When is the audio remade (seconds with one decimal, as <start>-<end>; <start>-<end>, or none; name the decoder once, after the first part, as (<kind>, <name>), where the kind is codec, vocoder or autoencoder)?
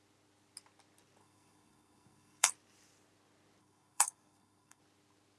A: 1.2-2.5 (codec, SNAC); 3.6-4.8